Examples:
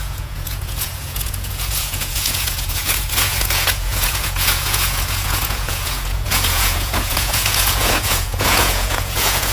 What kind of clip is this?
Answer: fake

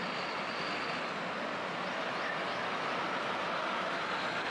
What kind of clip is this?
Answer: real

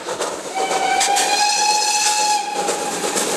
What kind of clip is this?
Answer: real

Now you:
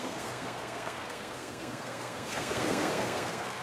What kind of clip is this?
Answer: fake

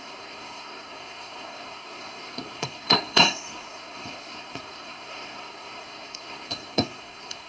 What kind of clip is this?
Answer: fake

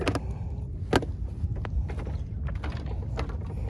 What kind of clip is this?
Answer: real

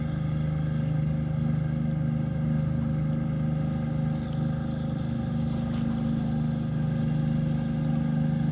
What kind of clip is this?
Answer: real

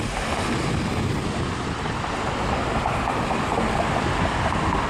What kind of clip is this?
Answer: real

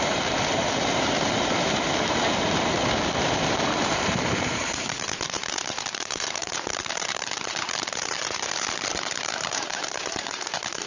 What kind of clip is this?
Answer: fake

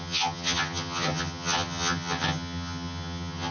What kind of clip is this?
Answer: fake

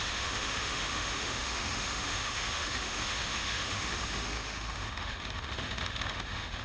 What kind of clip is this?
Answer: fake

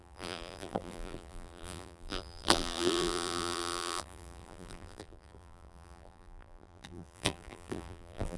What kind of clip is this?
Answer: fake